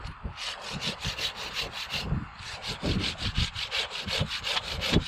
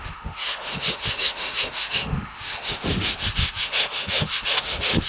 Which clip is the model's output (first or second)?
second